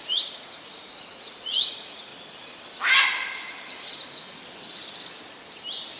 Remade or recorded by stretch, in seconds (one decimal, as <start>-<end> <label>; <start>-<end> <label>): 0.0-2.1 remade; 2.1-3.9 recorded; 3.9-4.4 remade; 4.4-6.0 recorded